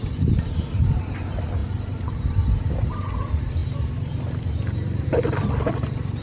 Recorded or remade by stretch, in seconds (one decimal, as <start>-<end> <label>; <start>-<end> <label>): 0.0-6.2 recorded